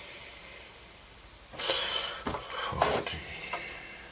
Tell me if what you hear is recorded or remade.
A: recorded